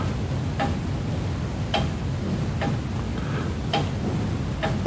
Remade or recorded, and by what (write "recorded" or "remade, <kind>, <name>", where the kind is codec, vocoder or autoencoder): recorded